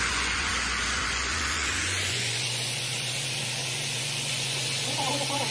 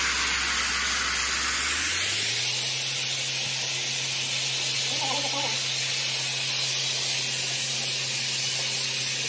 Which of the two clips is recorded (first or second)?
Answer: second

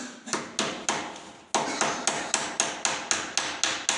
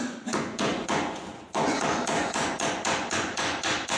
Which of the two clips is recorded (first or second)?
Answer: first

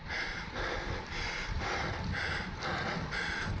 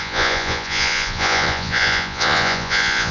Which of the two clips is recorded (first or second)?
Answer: first